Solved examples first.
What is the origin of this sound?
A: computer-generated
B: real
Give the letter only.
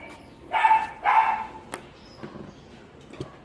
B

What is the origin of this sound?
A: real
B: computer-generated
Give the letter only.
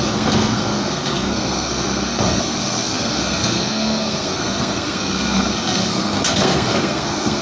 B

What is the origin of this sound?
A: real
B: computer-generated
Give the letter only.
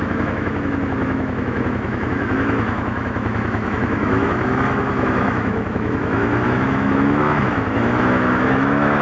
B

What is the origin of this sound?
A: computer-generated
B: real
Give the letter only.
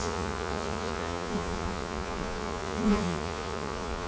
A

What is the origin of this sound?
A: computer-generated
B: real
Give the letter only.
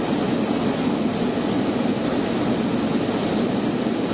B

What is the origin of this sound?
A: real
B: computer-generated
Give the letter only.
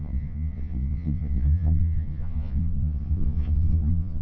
B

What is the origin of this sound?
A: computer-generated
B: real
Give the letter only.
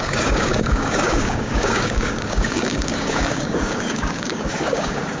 A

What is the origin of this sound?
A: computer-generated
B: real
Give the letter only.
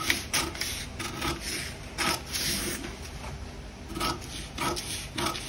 B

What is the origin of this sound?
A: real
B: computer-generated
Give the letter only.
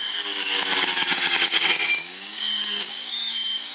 B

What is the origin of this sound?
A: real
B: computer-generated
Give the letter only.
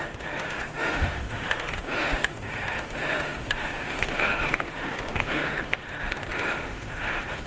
B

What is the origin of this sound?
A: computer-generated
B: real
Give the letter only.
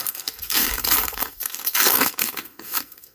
A